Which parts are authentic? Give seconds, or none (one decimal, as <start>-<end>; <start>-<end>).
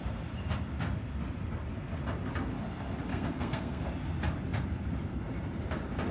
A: 0.0-3.1; 3.8-6.1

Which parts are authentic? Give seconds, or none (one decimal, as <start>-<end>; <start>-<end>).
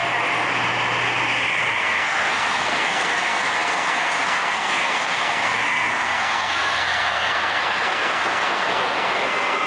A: 0.0-1.7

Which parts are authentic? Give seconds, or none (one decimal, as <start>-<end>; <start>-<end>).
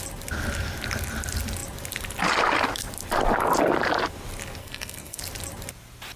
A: 0.0-4.6; 5.2-6.2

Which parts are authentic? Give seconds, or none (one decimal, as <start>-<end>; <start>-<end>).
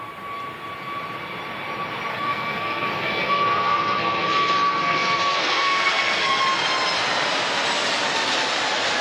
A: 0.0-2.1; 6.4-9.0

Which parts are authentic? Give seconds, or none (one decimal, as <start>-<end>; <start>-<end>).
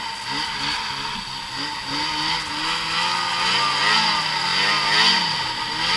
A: 0.0-6.0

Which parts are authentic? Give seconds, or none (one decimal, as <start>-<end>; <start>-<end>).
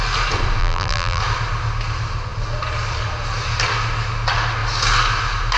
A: 0.0-0.6; 1.2-5.6